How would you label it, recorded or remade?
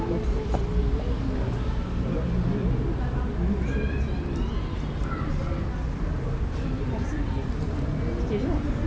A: recorded